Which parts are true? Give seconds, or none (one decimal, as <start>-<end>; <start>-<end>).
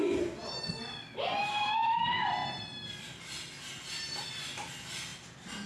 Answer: 0.0-5.7